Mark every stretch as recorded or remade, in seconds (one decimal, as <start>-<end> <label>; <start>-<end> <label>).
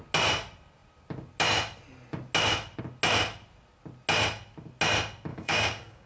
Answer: 0.0-5.3 recorded; 5.3-6.1 remade